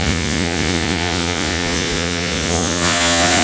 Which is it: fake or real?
fake